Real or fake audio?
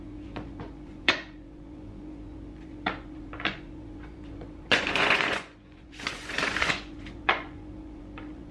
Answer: fake